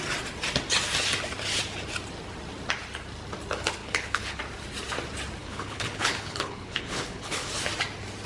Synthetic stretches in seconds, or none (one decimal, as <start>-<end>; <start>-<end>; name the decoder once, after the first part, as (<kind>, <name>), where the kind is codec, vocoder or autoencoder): 3.8-4.4 (codec, HILCodec); 5.4-7.5